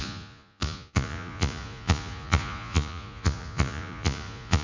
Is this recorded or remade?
remade